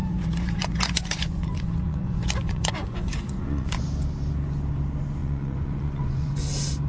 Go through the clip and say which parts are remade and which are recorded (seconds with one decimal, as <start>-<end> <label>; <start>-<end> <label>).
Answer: 0.0-3.8 remade; 3.8-5.2 recorded; 5.2-6.3 remade; 6.3-6.9 recorded